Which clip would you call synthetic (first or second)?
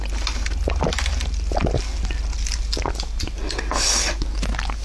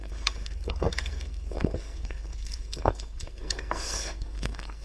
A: second